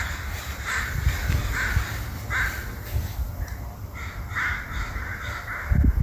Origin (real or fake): real